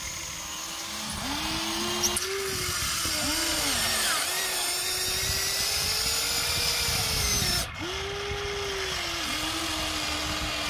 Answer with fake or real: real